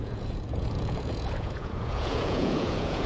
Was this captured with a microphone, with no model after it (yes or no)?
no